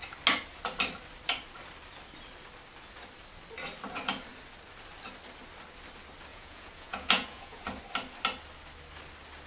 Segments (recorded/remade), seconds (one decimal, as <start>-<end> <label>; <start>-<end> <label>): 0.0-6.3 recorded; 6.3-7.6 remade; 7.6-9.5 recorded